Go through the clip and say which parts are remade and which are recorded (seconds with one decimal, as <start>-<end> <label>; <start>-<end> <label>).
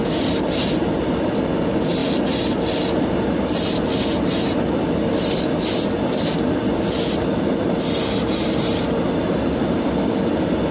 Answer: 0.0-10.7 recorded